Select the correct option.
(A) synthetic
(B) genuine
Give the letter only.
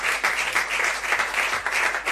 B